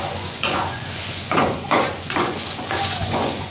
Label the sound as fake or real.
fake